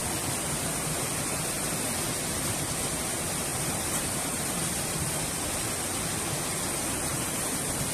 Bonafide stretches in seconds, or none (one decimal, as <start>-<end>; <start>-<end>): 0.0-3.5; 5.1-7.9